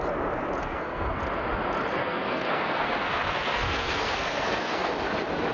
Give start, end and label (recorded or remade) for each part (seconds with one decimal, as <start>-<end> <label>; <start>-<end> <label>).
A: 0.0-0.6 recorded; 0.6-1.2 remade; 1.2-2.0 recorded; 2.0-4.9 remade; 4.9-5.5 recorded